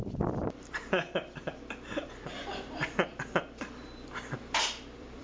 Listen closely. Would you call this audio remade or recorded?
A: remade